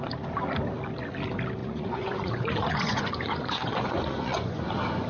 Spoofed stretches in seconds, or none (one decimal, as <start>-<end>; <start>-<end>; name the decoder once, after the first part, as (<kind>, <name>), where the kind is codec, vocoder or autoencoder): 1.6-4.6 (vocoder, Vocos)